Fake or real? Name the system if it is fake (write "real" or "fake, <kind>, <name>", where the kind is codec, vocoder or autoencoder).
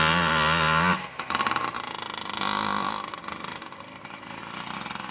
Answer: real